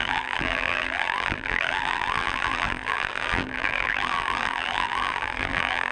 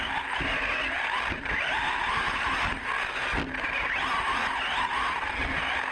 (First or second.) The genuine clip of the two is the second